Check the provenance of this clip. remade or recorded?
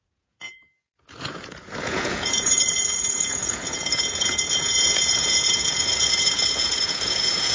remade